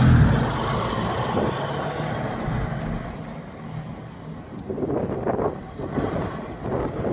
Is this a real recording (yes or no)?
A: yes